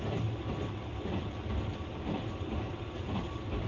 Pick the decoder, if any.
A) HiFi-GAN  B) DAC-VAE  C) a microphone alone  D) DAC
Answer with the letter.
C